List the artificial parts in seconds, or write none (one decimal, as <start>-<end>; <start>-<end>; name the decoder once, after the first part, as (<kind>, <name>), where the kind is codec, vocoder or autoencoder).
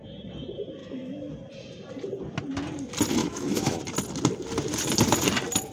0.8-1.3 (autoencoder, DAC-VAE); 3.2-3.8